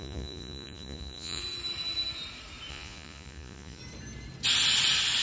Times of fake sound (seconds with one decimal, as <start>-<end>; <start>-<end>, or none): 0.0-1.4; 2.7-3.8